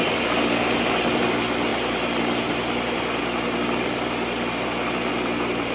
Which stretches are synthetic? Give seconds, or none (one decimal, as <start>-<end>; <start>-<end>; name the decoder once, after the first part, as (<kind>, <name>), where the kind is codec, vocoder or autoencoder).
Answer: none